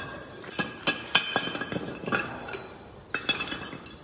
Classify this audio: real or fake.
real